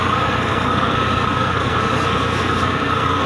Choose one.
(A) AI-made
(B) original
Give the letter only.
A